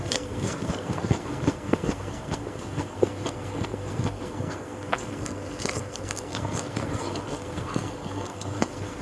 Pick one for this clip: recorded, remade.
remade